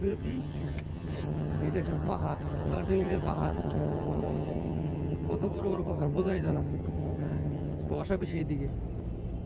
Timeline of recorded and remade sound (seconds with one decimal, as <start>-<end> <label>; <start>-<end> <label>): 0.0-8.4 remade; 8.4-9.5 recorded